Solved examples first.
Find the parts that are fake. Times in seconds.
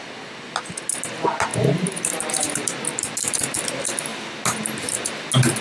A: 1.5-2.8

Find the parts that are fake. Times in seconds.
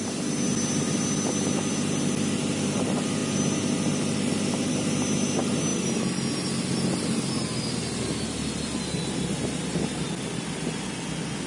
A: none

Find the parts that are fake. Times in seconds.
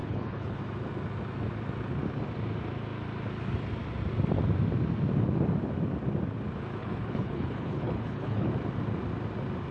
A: 0.0-0.6; 6.8-8.5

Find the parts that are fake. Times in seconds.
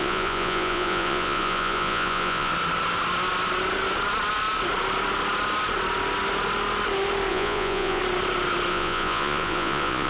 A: 0.0-2.5; 7.3-8.0; 8.7-10.1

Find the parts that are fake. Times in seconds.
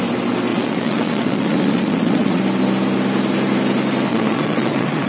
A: 0.5-2.4; 4.1-5.1